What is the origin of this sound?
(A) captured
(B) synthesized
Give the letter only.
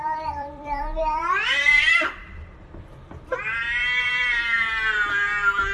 B